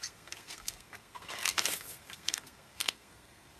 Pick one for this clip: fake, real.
fake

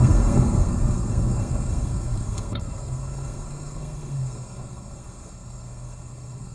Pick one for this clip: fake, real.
fake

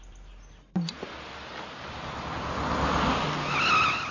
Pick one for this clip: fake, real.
real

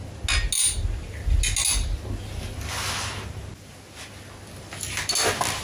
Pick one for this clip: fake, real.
real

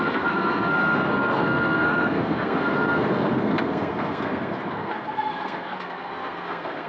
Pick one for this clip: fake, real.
fake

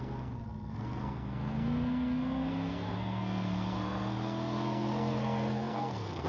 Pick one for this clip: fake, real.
fake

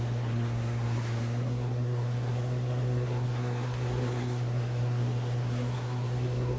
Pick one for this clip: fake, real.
fake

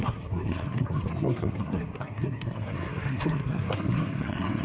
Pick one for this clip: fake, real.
fake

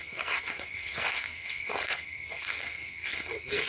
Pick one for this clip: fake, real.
fake